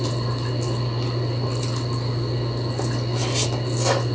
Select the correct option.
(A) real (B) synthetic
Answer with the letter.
A